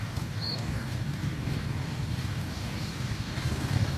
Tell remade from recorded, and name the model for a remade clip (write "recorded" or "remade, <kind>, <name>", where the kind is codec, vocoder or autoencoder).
remade, codec, DAC